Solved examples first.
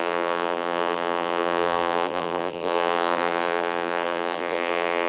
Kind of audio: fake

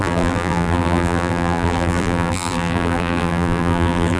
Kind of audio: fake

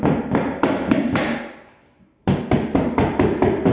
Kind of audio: real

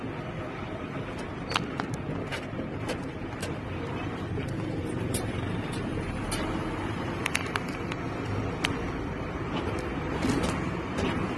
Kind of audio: fake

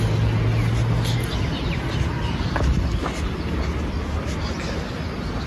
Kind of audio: real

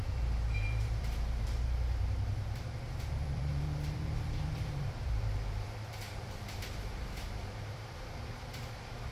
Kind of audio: fake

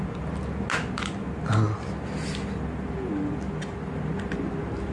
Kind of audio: real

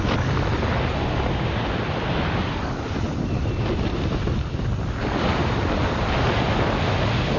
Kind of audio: real